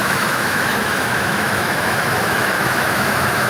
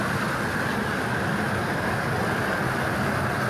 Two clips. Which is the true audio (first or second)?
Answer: second